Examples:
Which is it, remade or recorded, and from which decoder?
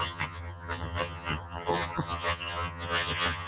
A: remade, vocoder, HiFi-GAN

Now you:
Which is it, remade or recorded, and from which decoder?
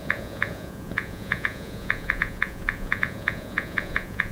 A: remade, vocoder, Vocos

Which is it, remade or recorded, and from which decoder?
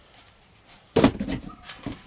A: remade, vocoder, BigVGAN v2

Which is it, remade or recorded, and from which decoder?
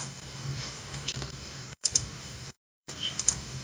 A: remade, codec, DAC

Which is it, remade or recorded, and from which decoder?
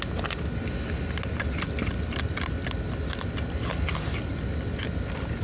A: recorded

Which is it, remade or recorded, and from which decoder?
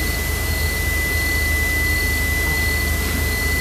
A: recorded